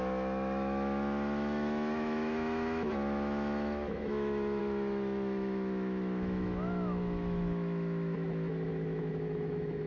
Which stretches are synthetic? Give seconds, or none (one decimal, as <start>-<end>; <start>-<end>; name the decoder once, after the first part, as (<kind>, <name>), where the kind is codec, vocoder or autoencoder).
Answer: 0.0-9.9 (autoencoder, DAC-VAE)